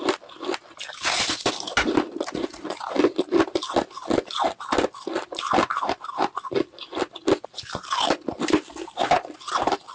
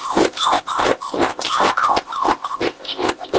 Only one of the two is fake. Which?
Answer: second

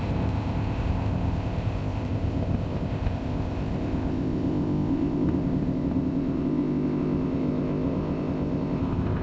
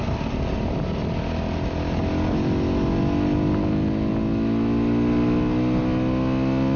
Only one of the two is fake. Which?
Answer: first